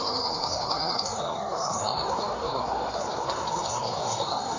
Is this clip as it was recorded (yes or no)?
no